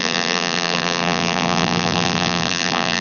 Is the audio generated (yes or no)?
yes